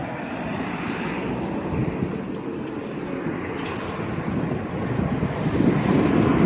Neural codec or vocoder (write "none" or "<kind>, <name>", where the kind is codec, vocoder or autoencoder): none